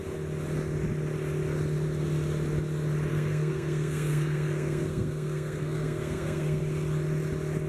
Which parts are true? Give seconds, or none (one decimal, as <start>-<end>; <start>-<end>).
0.0-3.1; 6.6-7.7